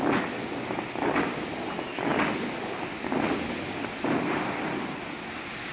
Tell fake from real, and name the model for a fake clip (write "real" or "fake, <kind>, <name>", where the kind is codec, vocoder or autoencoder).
real